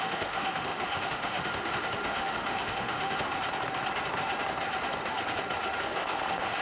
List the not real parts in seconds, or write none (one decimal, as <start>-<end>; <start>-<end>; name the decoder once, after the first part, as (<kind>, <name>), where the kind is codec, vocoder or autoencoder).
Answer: 0.0-3.3 (autoencoder, DAC-VAE); 5.8-6.6